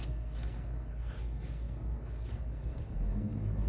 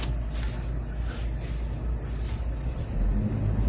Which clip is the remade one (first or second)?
first